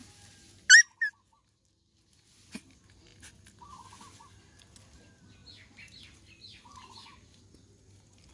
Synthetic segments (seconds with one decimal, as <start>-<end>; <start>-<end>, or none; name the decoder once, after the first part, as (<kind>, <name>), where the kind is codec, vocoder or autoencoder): none